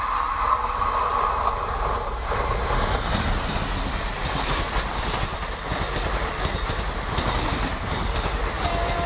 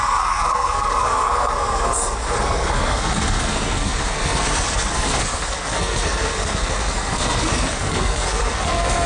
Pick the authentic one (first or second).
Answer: first